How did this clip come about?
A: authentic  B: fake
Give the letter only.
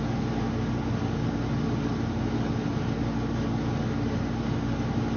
A